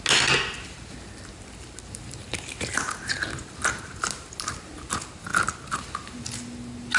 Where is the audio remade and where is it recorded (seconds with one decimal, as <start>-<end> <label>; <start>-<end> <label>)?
0.0-7.0 recorded